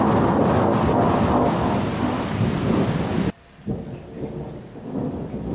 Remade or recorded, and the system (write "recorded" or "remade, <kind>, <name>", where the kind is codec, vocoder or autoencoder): recorded